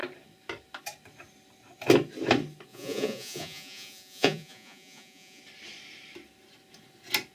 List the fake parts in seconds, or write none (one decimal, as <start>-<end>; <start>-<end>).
2.7-5.4